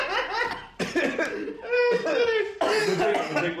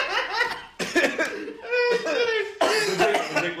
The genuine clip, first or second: second